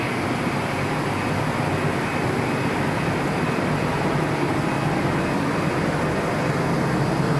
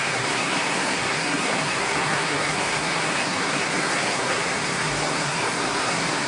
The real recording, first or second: first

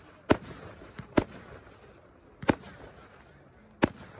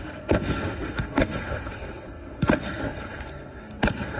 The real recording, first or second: first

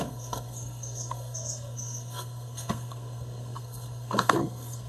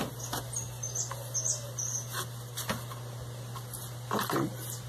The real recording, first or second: second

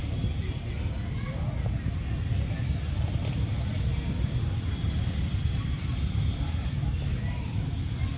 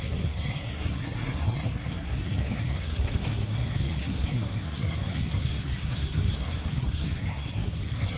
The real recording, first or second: first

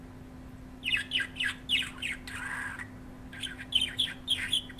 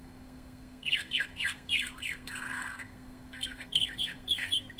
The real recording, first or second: first